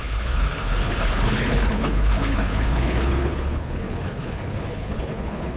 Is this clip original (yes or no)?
no